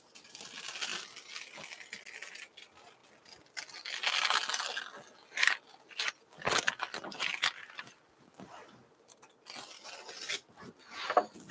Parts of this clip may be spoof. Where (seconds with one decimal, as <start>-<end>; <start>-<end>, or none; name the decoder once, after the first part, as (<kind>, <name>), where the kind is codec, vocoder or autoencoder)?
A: none